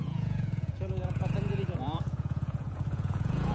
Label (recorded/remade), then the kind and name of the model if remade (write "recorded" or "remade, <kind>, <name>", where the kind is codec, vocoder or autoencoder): remade, vocoder, Vocos